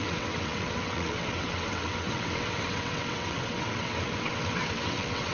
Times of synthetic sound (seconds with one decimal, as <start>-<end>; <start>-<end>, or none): 0.0-5.3